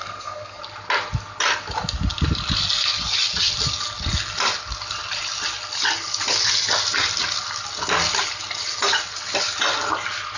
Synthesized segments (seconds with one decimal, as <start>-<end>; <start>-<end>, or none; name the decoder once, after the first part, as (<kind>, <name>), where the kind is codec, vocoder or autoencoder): 0.0-0.6 (codec, SNAC)